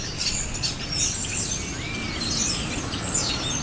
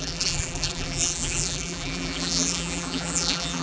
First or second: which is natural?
first